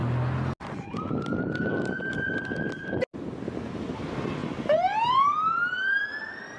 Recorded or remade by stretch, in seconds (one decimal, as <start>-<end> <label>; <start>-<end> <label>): 0.0-6.6 recorded